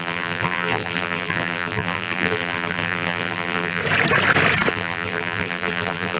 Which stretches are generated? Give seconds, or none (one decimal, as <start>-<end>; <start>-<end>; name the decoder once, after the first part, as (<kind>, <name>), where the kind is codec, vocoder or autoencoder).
0.0-3.8 (vocoder, BigVGAN v2); 4.7-6.2